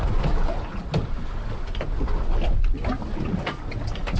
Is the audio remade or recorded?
recorded